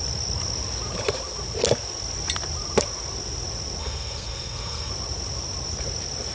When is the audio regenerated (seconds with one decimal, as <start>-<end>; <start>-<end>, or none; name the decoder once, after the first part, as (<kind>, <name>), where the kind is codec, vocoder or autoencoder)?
3.8-4.9 (codec, SNAC)

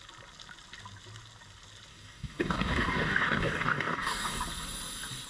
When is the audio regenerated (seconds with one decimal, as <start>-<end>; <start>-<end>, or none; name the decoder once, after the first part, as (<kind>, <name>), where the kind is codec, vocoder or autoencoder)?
1.9-4.4 (codec, DAC)

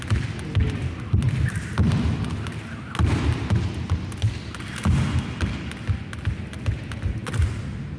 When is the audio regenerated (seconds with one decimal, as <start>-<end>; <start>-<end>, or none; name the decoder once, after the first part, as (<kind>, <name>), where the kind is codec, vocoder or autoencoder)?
none

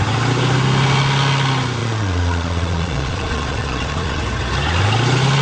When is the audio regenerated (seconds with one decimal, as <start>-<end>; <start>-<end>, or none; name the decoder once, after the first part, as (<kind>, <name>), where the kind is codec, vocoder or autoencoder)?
1.8-4.2 (vocoder, Vocos)

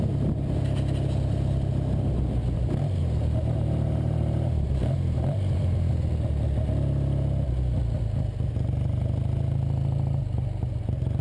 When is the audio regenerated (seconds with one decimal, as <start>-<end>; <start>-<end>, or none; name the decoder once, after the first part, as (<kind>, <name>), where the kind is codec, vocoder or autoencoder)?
3.0-5.9 (vocoder, BigVGAN v2)

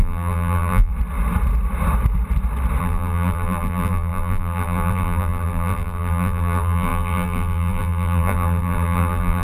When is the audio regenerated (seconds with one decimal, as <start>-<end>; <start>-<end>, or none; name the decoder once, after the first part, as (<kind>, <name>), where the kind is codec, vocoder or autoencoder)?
0.0-0.9 (vocoder, BigVGAN v2); 2.8-9.4